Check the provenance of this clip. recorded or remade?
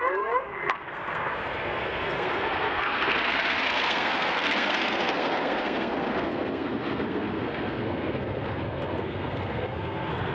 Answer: remade